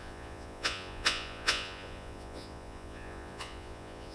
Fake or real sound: fake